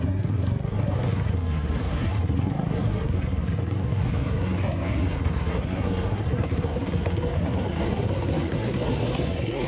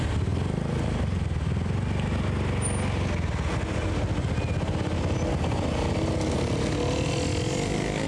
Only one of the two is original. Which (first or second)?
second